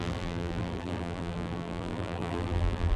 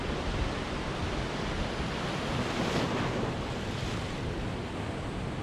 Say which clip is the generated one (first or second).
first